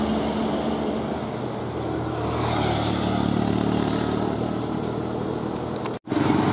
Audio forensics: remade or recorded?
recorded